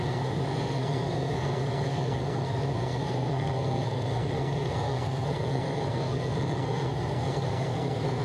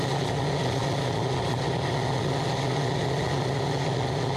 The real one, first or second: second